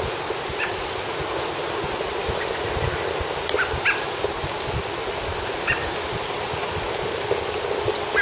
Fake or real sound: real